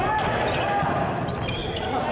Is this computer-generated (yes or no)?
no